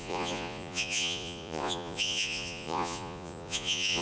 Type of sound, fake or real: fake